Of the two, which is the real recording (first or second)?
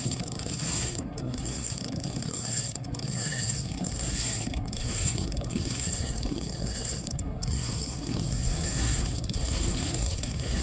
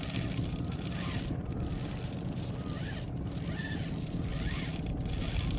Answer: second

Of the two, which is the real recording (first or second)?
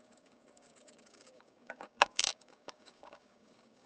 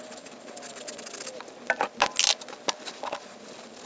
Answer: second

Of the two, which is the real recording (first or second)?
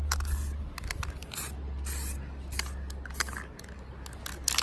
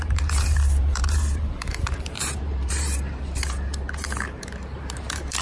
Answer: first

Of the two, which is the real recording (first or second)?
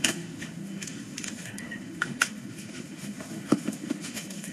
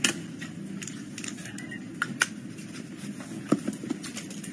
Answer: second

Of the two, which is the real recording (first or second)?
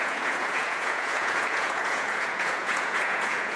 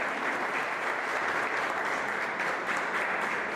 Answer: second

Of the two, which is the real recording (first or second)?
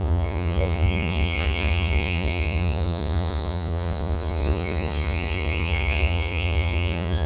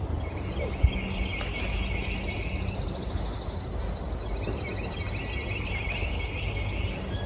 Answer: second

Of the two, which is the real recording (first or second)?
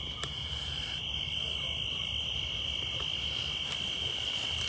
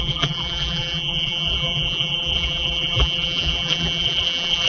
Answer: first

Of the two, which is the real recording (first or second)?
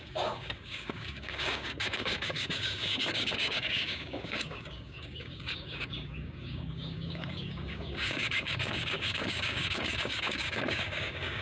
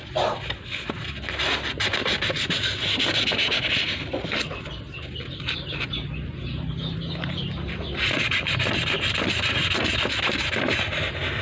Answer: second